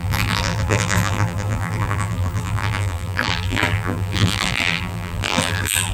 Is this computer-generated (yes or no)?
yes